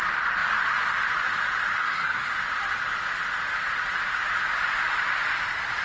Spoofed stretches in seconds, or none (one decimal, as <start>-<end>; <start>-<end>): 1.8-2.3